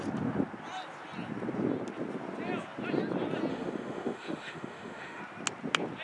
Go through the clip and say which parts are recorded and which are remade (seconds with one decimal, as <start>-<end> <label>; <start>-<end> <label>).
0.0-3.5 recorded; 3.5-5.2 remade; 5.2-6.0 recorded